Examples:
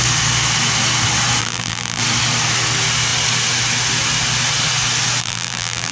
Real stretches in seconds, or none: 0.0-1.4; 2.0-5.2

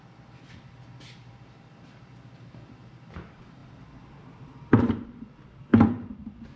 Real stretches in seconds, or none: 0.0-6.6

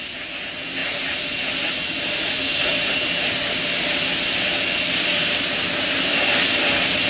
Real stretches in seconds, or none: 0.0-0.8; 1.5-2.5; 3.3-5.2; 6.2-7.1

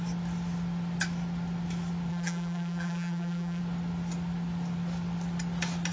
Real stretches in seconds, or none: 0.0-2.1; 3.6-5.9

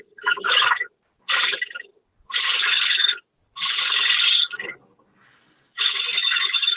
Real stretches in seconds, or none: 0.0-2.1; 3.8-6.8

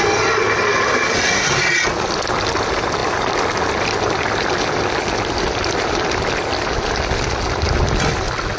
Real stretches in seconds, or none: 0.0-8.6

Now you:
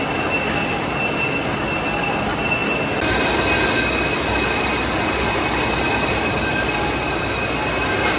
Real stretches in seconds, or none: 0.0-8.2

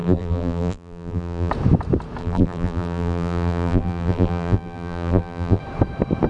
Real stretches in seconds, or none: 1.5-2.2; 5.6-6.3